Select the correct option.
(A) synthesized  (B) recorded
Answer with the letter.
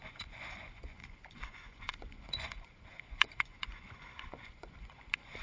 A